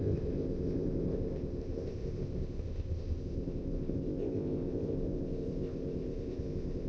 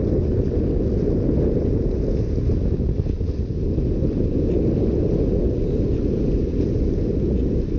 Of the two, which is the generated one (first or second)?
first